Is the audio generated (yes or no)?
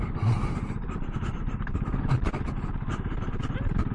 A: yes